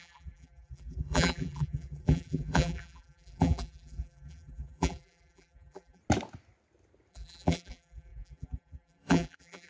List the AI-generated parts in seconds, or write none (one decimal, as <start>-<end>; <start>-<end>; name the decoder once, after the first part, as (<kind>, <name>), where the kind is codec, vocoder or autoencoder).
0.0-6.0 (vocoder, BigVGAN v2); 7.1-9.7